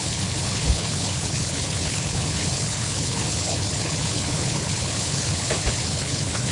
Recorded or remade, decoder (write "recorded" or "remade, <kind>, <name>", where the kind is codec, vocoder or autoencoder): remade, codec, HILCodec